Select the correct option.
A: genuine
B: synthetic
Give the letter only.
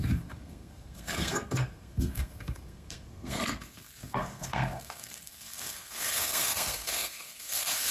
B